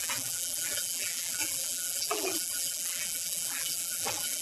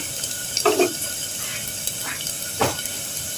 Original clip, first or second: second